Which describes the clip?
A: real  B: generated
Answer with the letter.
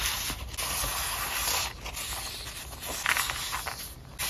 A